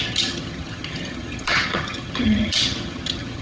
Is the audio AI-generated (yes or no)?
yes